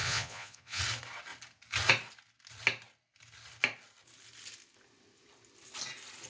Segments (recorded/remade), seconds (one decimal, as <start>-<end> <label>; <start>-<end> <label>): 0.0-0.8 remade; 0.8-6.3 recorded